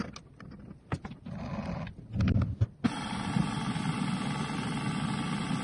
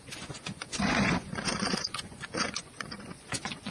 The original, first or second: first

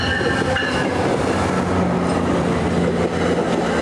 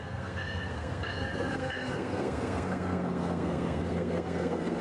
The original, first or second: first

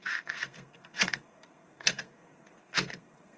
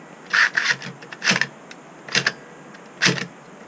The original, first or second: second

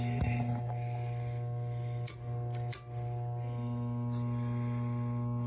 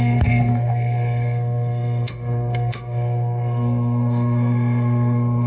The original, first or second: first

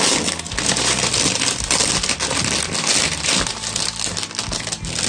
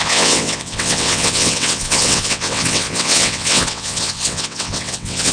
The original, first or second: first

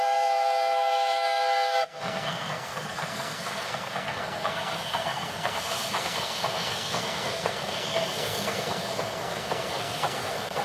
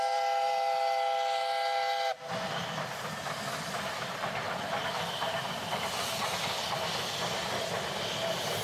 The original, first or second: second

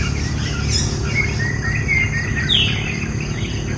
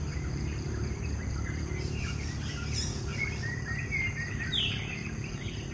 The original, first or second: first